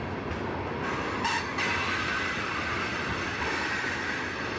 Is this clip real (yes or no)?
yes